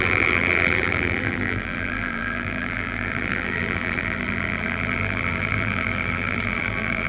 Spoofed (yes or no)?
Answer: yes